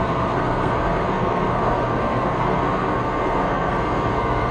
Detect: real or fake fake